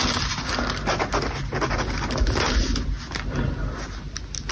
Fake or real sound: real